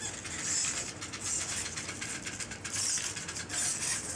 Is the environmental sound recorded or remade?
recorded